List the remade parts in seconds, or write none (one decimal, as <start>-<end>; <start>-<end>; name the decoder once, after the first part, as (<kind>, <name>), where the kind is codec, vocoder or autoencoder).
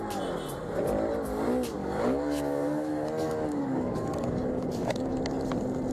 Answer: 1.8-5.1 (codec, DAC)